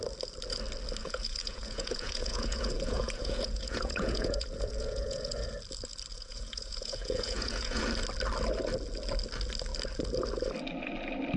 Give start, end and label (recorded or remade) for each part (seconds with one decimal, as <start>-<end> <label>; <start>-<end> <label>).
0.0-1.0 recorded; 1.0-5.5 remade; 5.5-6.1 recorded; 6.1-7.8 remade; 7.8-11.4 recorded